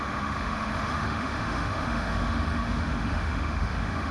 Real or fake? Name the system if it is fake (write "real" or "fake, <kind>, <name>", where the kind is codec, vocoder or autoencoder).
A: fake, autoencoder, DAC-VAE